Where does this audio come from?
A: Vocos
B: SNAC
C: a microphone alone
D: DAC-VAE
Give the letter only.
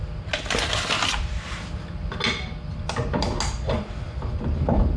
C